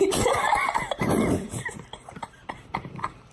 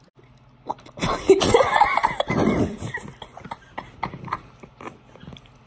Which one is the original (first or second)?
second